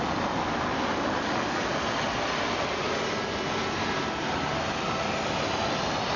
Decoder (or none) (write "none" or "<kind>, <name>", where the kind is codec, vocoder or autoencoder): none